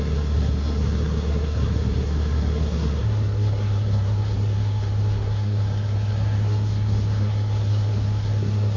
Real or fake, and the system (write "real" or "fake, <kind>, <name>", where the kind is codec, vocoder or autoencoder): fake, codec, SNAC